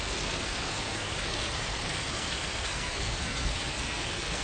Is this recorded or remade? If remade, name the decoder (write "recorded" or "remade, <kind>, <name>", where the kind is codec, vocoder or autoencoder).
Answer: remade, codec, SNAC